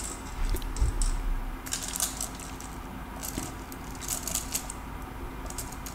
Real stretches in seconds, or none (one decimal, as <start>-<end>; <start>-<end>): 0.0-5.9